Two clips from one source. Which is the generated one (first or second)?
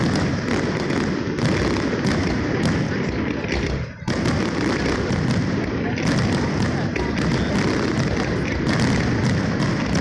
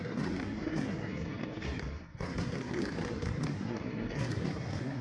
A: second